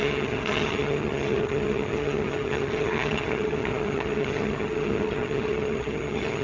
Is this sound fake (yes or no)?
yes